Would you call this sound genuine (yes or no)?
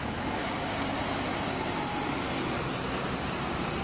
yes